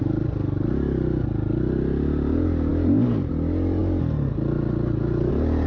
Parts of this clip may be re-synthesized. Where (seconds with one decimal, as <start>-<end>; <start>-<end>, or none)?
none

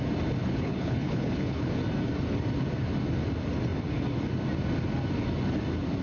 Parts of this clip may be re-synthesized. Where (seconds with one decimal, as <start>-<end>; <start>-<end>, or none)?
0.4-1.7

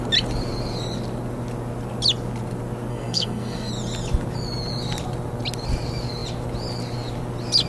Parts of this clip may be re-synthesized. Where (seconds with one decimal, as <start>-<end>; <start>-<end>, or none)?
2.9-3.7

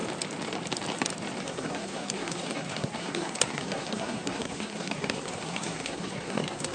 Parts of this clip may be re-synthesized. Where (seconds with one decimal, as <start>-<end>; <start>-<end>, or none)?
1.4-6.7

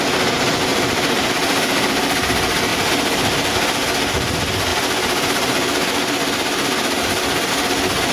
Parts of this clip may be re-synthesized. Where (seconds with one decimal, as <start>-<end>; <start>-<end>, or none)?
0.7-1.3; 4.7-7.5

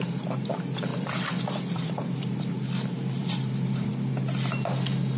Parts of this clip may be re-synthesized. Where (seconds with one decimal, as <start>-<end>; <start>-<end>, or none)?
0.9-2.5; 3.2-3.9